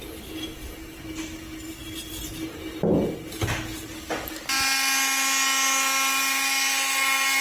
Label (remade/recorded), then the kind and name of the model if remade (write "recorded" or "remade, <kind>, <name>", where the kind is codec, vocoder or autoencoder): recorded